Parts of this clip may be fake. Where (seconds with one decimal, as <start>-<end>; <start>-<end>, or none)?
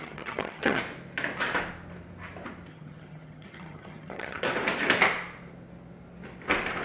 0.0-0.8; 2.7-4.4